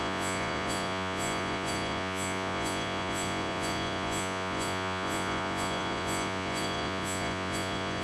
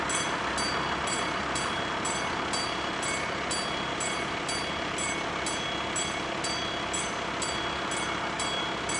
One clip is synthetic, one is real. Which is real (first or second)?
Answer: second